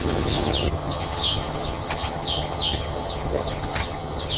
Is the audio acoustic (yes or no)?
no